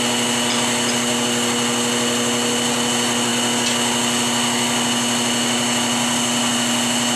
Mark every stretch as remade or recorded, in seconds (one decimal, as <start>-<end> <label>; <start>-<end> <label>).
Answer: 0.0-7.2 recorded